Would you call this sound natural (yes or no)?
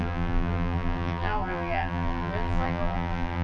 no